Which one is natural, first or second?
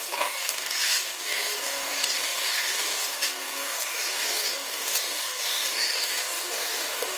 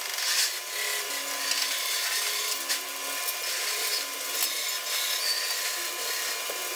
second